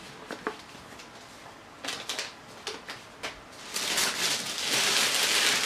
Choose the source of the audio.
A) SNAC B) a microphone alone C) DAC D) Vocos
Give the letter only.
B